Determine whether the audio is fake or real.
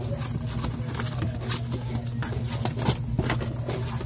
real